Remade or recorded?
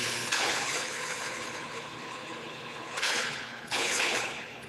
remade